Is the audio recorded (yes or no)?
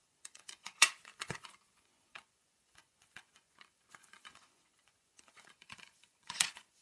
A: no